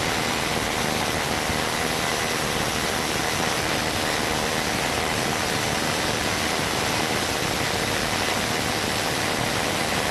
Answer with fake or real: real